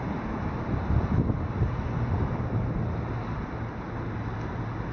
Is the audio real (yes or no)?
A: yes